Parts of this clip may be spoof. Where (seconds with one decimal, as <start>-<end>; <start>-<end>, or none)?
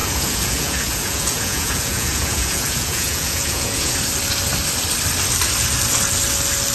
0.0-3.9